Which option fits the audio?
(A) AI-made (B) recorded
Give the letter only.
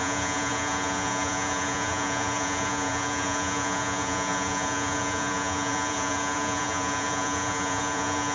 A